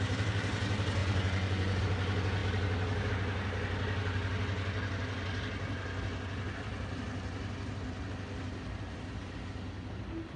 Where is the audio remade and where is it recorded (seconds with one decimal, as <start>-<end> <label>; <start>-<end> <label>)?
0.0-1.0 recorded; 1.0-1.8 remade; 1.8-10.4 recorded